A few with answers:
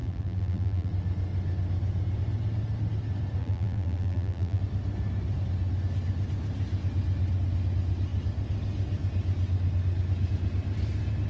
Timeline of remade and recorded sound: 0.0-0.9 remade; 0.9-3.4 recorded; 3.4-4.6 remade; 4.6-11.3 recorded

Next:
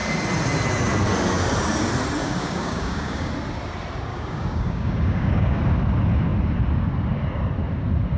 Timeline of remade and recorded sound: 0.0-2.2 recorded; 2.2-3.3 remade; 3.3-4.1 recorded; 4.1-5.6 remade; 5.6-8.2 recorded

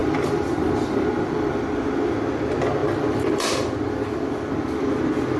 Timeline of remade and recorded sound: 0.0-1.6 remade; 1.6-2.8 recorded; 2.8-5.0 remade; 5.0-5.4 recorded

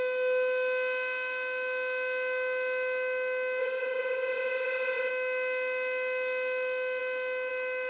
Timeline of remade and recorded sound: 0.0-3.6 recorded; 3.6-5.1 remade; 5.1-7.9 recorded

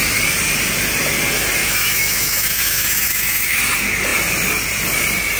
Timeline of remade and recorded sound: 0.0-1.6 recorded; 1.6-3.6 remade; 3.6-5.4 recorded

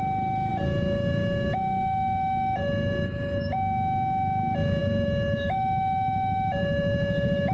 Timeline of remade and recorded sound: 0.0-3.5 remade; 3.5-4.8 recorded; 4.8-7.5 remade